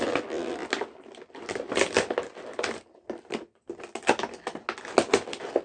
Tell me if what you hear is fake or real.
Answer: real